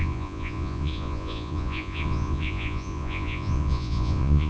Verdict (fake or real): fake